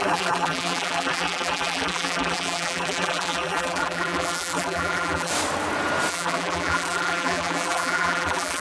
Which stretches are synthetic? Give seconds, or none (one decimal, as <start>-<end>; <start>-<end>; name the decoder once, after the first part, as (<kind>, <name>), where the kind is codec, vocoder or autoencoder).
0.0-5.3 (vocoder, BigVGAN v2); 6.1-8.6